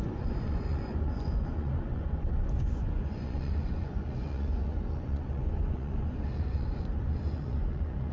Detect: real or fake fake